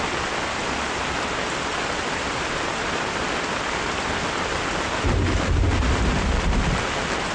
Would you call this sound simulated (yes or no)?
no